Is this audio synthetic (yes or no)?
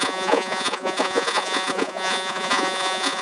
yes